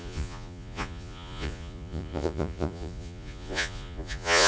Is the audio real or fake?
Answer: fake